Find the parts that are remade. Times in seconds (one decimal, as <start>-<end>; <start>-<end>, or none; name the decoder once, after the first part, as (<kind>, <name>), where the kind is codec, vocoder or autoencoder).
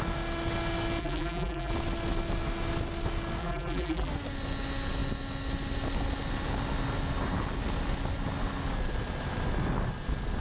1.0-1.7 (vocoder, BigVGAN v2); 3.4-4.1